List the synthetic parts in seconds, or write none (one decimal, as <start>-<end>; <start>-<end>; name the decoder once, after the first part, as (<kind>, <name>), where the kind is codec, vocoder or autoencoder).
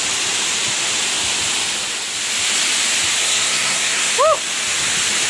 3.2-4.1 (codec, SNAC)